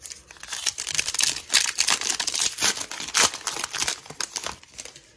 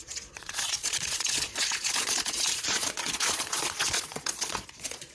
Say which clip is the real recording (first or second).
first